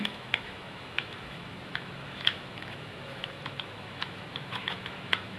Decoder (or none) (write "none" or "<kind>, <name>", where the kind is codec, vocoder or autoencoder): autoencoder, DAC-VAE